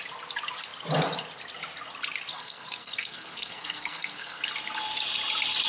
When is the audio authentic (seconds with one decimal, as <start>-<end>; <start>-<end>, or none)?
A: 0.0-2.3; 4.4-5.7